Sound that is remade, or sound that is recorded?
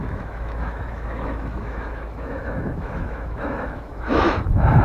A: remade